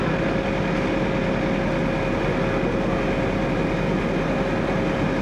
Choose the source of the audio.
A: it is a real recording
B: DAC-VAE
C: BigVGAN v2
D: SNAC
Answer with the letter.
A